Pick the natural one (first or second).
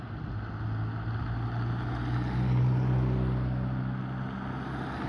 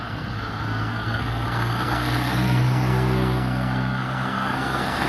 first